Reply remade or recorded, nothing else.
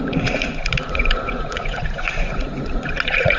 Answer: remade